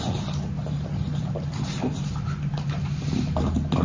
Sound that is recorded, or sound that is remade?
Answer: recorded